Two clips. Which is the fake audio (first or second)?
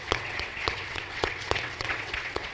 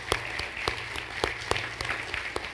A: first